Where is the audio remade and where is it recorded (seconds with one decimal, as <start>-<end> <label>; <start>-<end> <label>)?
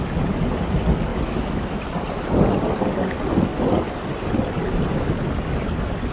0.0-1.1 recorded; 1.1-1.9 remade; 1.9-6.1 recorded